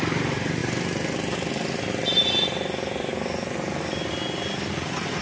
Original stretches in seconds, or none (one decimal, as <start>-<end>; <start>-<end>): 0.0-5.2